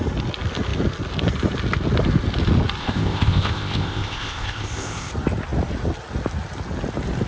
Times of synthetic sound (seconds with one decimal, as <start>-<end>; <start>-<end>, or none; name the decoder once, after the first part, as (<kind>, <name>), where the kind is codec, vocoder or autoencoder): 2.8-5.1 (codec, ZipCodec)